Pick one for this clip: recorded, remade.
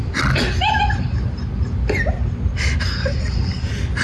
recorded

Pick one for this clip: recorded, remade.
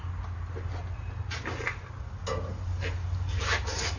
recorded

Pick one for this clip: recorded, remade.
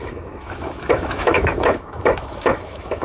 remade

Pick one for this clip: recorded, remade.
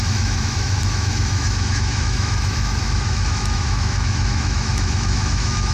remade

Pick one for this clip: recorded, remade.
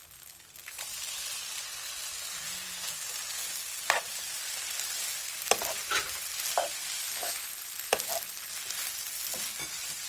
recorded